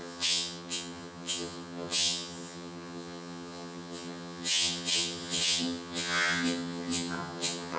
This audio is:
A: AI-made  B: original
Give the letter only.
A